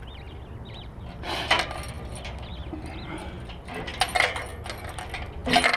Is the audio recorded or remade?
recorded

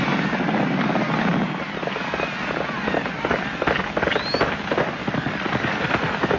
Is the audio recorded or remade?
recorded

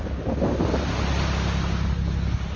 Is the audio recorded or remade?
recorded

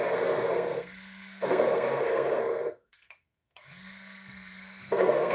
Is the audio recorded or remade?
remade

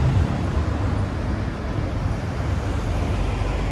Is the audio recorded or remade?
recorded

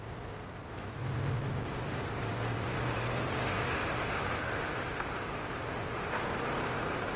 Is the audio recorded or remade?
recorded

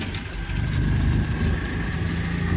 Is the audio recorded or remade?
recorded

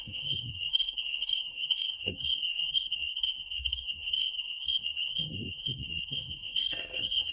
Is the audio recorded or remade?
remade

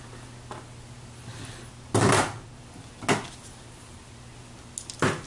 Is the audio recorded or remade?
recorded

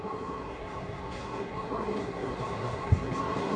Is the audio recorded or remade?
remade